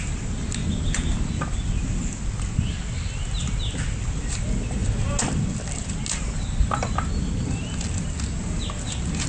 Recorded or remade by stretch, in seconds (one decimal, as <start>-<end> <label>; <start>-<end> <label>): 0.0-9.3 recorded